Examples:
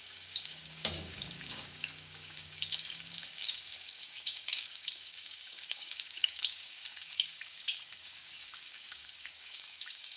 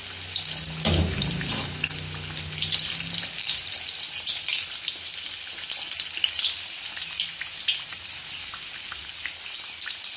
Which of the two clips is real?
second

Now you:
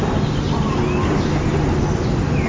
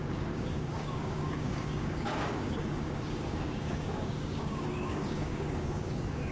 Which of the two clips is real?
first